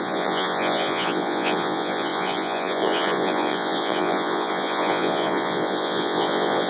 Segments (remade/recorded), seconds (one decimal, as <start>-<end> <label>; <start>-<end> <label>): 0.0-6.7 remade